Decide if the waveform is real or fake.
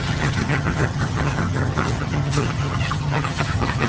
fake